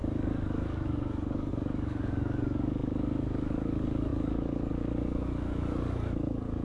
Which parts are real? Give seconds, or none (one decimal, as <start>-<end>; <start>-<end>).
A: none